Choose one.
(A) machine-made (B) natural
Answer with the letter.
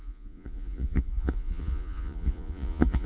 A